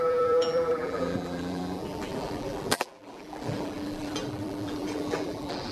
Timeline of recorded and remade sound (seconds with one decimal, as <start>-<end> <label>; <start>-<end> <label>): 0.0-5.7 remade